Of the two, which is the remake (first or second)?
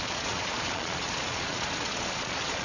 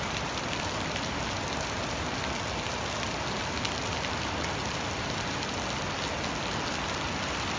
first